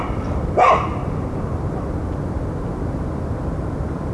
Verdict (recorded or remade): remade